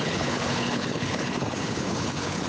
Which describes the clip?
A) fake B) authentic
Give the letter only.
A